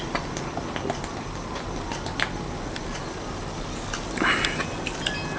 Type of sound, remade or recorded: recorded